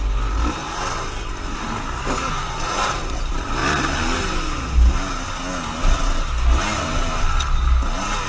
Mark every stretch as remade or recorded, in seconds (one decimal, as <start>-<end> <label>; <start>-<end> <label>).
0.0-8.3 recorded